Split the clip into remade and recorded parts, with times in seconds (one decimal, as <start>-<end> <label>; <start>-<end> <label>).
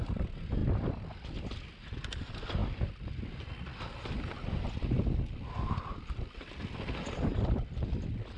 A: 0.0-0.6 recorded; 0.6-1.4 remade; 1.4-2.6 recorded; 2.6-3.3 remade; 3.3-8.4 recorded